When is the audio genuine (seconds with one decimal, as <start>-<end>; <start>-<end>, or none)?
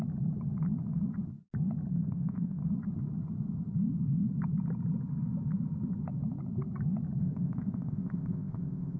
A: 0.0-1.9; 2.6-7.2